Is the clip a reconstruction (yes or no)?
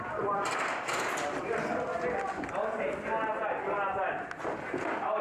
no